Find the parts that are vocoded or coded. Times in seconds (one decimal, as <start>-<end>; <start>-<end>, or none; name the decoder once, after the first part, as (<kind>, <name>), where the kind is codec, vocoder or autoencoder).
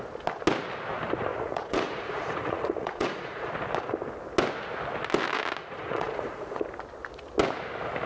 1.3-3.5 (vocoder, Vocos); 5.6-6.6